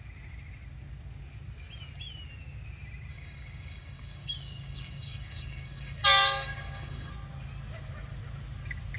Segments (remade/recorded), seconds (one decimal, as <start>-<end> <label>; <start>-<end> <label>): 0.0-3.1 recorded; 3.1-7.1 remade; 7.1-9.0 recorded